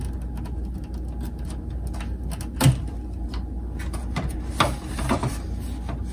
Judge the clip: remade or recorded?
recorded